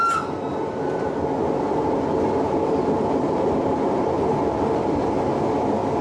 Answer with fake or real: real